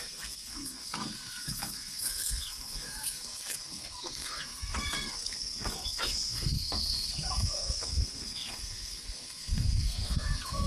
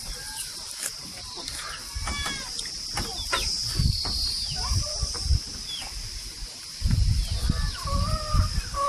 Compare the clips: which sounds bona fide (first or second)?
second